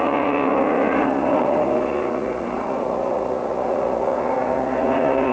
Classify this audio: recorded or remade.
remade